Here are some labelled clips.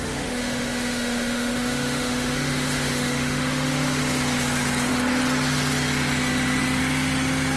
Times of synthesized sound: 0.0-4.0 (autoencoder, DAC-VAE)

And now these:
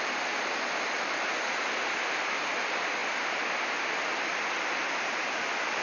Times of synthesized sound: none